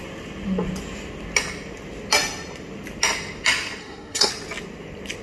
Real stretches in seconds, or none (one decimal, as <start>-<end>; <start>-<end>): 0.0-3.8; 4.3-5.2